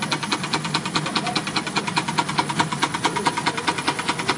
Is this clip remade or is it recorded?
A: recorded